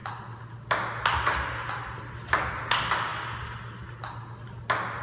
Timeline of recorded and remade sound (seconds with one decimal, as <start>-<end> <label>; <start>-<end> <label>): 0.0-5.0 recorded